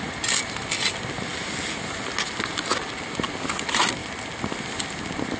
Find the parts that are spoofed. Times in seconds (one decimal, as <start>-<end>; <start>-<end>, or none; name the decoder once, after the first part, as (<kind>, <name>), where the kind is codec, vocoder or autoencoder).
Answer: none